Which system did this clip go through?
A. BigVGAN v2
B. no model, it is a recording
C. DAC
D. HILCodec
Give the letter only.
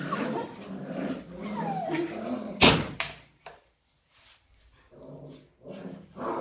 B